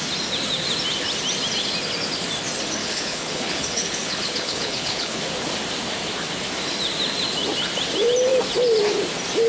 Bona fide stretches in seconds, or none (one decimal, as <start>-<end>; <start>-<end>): 0.0-2.8; 5.2-9.5